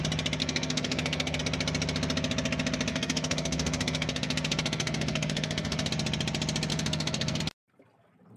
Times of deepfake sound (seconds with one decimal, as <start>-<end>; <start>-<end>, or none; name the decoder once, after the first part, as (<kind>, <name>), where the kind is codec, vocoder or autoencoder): 0.4-1.4 (codec, SNAC); 2.9-5.9; 6.7-7.4